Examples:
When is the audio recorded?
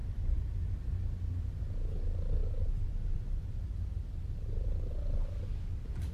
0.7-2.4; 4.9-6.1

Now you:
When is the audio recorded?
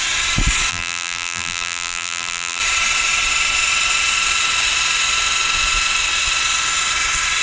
0.0-0.7; 2.6-7.4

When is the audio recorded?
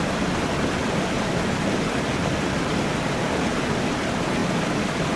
0.0-0.8; 2.6-4.4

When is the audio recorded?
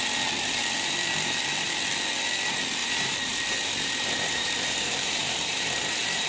0.0-2.8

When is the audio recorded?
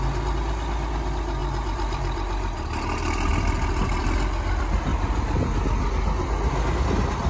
0.0-1.4; 3.3-7.3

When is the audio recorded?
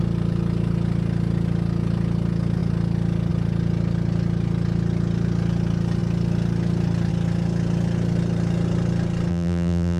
0.0-9.3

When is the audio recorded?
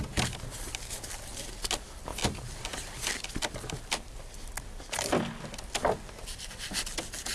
0.0-2.1; 6.5-7.3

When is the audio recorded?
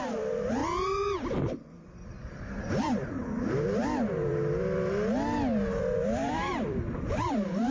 0.6-2.7; 4.4-5.8